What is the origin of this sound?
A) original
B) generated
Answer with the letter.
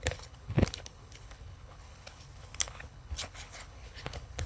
B